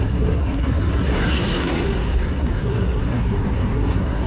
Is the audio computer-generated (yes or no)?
yes